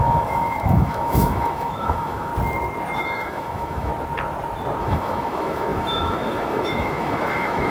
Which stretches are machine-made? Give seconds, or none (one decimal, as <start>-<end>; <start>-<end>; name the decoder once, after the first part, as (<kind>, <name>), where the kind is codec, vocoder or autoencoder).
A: 0.0-2.3 (autoencoder, DAC-VAE); 3.0-3.9; 4.8-7.7